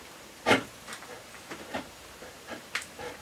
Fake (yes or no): yes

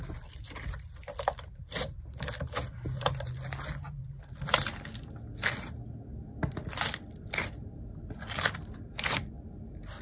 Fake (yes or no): yes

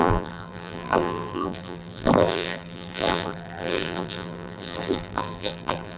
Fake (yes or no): yes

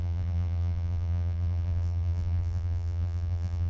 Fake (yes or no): yes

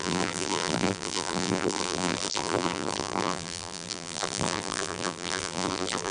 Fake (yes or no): yes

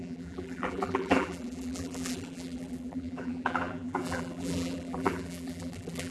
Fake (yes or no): yes